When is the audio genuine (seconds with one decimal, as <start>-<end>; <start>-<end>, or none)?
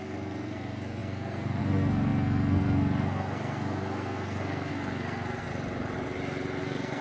5.5-6.6